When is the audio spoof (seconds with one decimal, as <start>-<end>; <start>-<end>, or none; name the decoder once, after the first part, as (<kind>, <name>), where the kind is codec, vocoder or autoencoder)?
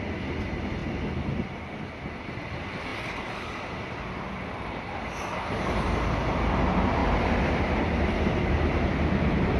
none